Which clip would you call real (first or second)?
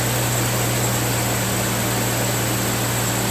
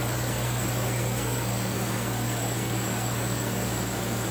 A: first